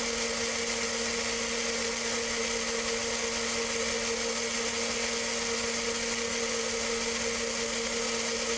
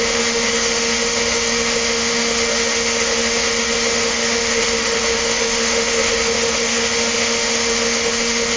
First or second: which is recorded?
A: first